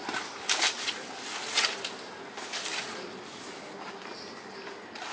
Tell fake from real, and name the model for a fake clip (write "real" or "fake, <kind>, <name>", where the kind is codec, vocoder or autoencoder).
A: real